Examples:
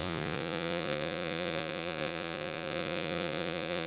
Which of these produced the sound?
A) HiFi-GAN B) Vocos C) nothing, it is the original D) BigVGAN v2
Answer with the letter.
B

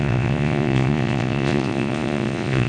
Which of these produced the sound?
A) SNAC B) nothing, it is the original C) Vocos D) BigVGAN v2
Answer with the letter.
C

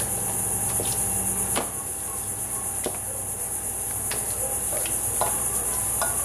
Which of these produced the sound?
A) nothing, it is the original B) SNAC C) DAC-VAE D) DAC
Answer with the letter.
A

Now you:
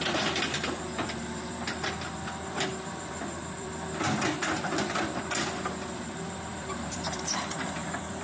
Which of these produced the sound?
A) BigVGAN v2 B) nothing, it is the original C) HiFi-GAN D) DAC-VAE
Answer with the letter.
A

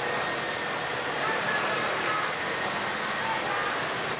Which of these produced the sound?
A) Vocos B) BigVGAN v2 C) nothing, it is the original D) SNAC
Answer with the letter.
C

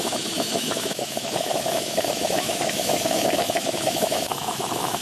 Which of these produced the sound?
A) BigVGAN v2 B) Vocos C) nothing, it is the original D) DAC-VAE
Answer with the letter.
D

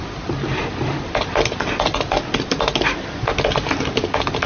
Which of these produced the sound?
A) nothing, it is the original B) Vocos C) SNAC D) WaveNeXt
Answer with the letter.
A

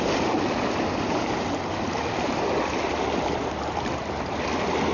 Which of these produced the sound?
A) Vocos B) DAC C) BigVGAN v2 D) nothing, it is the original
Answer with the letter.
D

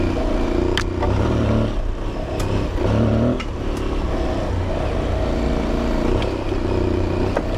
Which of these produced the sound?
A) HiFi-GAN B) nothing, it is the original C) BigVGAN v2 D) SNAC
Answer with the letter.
B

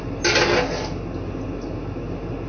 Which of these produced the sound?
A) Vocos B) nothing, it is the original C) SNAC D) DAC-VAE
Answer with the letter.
B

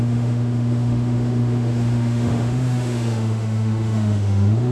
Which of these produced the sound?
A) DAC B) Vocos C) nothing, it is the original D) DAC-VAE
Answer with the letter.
D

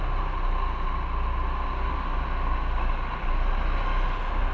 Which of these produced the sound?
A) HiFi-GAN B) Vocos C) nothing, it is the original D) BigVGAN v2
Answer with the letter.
C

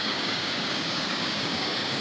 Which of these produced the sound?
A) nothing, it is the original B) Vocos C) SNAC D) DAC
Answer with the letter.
D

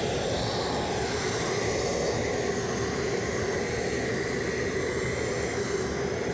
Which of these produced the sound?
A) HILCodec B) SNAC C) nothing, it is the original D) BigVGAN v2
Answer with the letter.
C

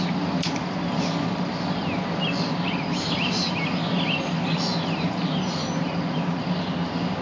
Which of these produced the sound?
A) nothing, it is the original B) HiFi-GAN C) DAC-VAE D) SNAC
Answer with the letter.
A